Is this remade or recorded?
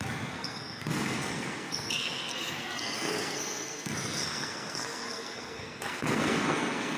remade